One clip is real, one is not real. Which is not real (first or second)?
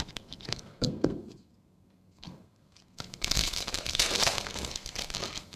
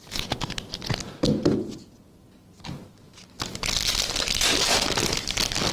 first